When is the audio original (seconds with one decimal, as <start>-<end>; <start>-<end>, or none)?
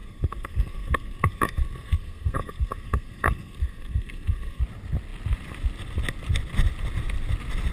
4.6-7.7